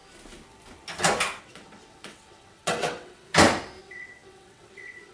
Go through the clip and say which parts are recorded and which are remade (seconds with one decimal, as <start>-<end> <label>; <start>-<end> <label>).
0.0-1.4 recorded; 1.4-3.3 remade; 3.3-3.8 recorded; 3.8-5.1 remade